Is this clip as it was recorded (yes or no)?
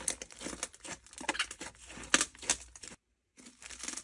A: yes